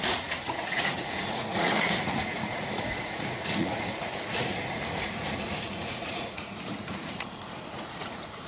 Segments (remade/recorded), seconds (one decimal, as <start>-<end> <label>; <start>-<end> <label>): 0.0-8.5 remade